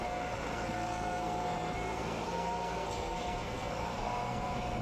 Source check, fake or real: fake